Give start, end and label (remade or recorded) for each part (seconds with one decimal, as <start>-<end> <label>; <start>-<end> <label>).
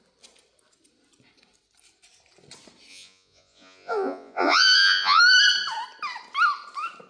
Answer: 0.0-2.9 recorded; 2.9-5.2 remade; 5.2-7.1 recorded